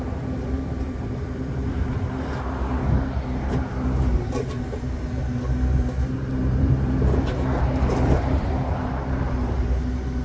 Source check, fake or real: fake